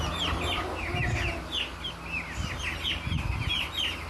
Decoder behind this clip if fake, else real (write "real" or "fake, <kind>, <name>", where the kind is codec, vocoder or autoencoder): real